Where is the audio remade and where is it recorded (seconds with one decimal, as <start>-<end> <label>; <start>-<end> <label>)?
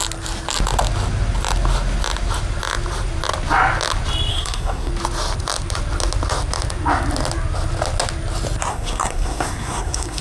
0.0-4.3 recorded; 4.3-4.9 remade; 4.9-8.7 recorded; 8.7-10.2 remade